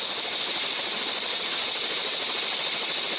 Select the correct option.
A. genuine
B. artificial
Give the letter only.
A